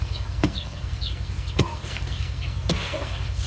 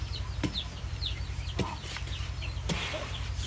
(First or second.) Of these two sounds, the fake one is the first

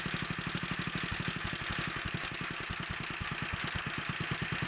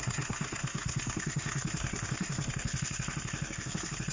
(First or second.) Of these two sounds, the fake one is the second